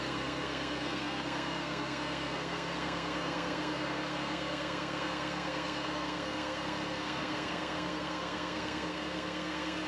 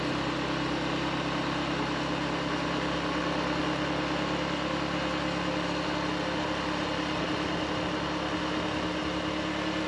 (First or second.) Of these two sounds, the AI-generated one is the first